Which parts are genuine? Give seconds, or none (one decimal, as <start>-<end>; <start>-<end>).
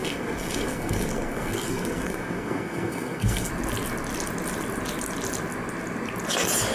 3.5-6.7